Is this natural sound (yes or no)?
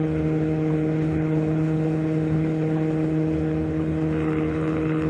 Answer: no